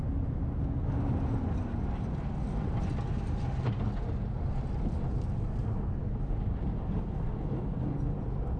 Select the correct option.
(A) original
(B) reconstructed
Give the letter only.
A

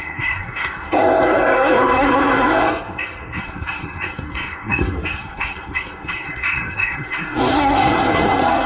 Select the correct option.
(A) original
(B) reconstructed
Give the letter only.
B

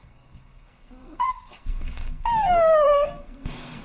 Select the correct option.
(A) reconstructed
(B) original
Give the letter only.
A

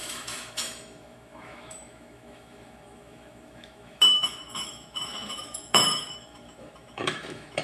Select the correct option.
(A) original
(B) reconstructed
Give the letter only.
B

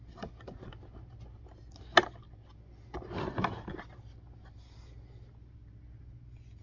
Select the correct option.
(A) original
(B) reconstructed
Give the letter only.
A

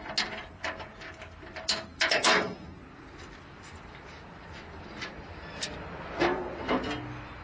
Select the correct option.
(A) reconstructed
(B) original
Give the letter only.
B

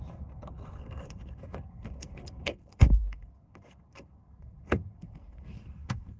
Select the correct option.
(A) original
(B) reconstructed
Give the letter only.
B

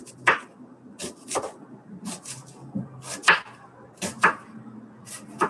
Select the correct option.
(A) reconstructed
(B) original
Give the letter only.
B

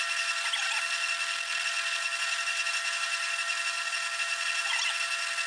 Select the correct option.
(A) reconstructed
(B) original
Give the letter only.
B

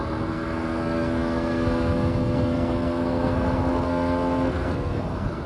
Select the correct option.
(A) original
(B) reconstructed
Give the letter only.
B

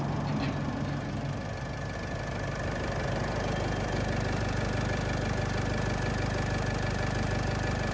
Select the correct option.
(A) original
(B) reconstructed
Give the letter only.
A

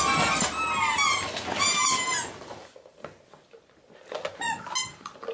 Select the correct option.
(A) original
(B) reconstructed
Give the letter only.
A